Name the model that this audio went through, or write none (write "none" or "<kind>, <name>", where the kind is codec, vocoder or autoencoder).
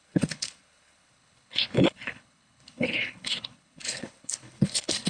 codec, HILCodec